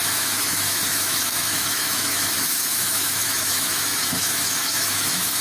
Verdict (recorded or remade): remade